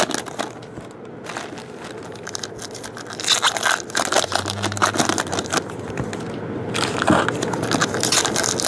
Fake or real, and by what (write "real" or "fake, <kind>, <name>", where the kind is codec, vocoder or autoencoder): real